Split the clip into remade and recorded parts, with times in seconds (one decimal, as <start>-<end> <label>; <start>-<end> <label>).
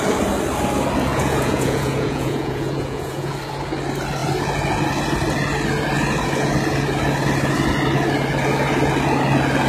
0.0-1.1 recorded; 1.1-3.3 remade; 3.3-9.7 recorded